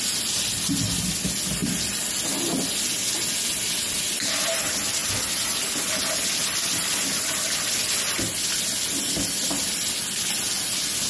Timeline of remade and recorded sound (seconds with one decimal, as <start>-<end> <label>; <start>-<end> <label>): 0.0-11.1 recorded